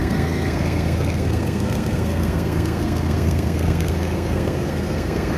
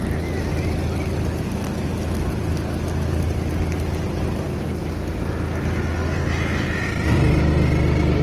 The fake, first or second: first